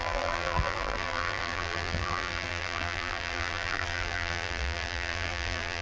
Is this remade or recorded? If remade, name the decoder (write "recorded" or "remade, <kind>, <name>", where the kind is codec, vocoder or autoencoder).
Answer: remade, vocoder, BigVGAN v2